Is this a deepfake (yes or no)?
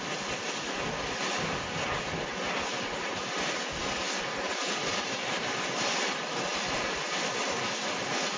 no